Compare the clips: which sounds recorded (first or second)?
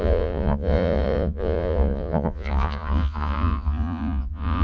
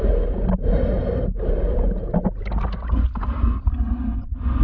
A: second